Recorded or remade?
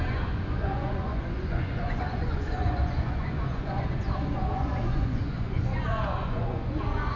remade